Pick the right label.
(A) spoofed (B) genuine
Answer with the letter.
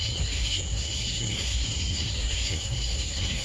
A